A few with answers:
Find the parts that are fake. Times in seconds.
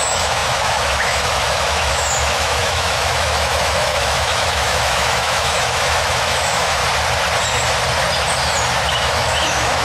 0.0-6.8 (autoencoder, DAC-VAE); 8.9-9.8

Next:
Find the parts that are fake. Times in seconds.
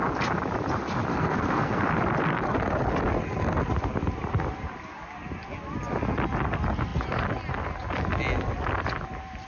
1.1-1.8 (codec, SNAC)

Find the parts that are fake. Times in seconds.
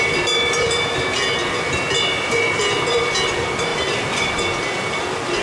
none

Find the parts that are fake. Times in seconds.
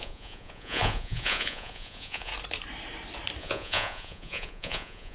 0.0-2.3 (vocoder, Vocos); 3.4-5.1